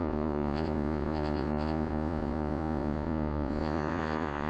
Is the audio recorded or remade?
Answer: remade